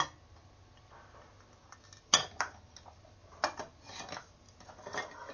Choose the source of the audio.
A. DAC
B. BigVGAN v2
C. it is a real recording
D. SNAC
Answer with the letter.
C